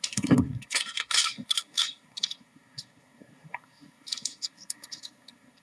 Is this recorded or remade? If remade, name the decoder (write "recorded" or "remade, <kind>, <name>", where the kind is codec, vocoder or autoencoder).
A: remade, codec, SNAC